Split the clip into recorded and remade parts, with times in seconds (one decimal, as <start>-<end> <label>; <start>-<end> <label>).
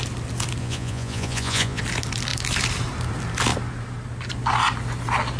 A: 0.0-0.6 recorded; 0.6-1.8 remade; 1.8-5.4 recorded